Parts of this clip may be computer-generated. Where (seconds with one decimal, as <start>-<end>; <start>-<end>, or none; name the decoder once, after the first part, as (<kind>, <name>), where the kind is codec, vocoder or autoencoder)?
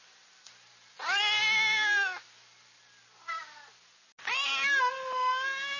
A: none